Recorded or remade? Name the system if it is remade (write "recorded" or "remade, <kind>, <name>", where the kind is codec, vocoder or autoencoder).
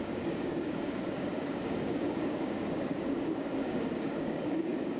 remade, codec, DAC